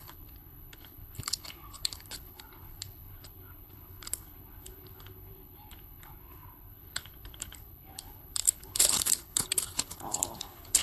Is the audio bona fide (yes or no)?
no